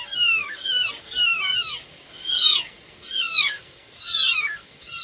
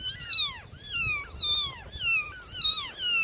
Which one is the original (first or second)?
second